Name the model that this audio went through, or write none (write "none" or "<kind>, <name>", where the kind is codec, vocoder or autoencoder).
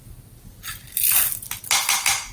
none